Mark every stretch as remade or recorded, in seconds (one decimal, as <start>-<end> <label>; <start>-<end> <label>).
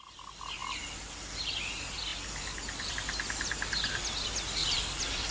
0.0-0.6 recorded; 0.6-1.6 remade; 1.6-2.1 recorded; 2.1-2.9 remade; 2.9-4.6 recorded; 4.6-5.3 remade